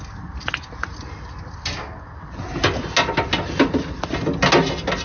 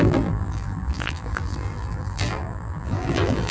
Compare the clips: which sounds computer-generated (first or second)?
second